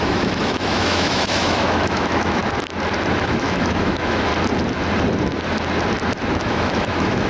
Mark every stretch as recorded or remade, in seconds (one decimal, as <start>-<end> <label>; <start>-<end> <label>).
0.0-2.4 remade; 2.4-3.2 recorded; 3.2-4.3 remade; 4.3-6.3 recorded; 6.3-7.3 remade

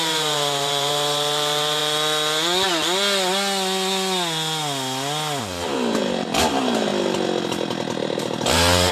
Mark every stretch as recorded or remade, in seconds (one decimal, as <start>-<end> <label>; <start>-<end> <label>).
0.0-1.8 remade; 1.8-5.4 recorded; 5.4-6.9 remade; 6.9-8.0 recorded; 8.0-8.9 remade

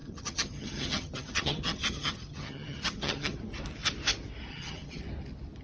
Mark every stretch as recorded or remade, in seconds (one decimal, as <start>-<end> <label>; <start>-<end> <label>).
0.0-3.4 remade; 3.4-4.5 recorded; 4.5-5.0 remade; 5.0-5.6 recorded

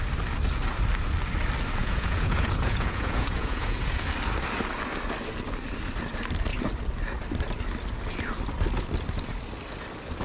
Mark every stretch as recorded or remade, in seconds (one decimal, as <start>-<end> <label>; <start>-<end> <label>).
0.0-1.8 recorded; 1.8-4.1 remade; 4.1-10.2 recorded

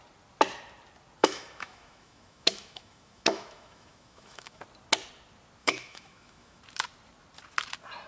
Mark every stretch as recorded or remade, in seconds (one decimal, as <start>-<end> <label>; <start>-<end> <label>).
0.0-1.2 recorded; 1.2-4.6 remade; 4.6-5.6 recorded; 5.6-6.6 remade; 6.6-8.1 recorded

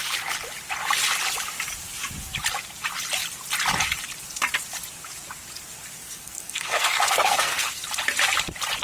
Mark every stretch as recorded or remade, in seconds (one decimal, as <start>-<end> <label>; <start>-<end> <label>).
0.0-6.0 recorded; 6.0-7.8 remade; 7.8-8.8 recorded